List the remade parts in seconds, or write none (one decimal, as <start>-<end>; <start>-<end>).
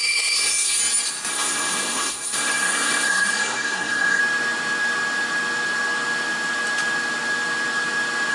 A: 0.0-0.8; 1.3-4.2